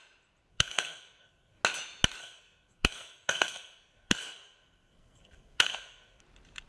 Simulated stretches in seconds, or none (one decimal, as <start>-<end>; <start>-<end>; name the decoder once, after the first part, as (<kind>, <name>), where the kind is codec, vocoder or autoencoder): 0.5-1.6 (codec, SNAC); 2.2-6.2